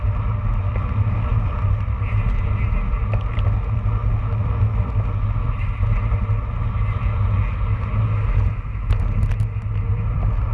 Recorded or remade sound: recorded